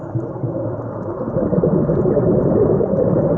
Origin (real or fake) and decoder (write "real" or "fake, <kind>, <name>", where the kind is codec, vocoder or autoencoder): real